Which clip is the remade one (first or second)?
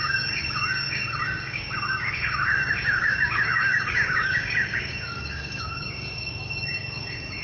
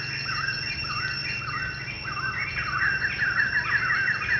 first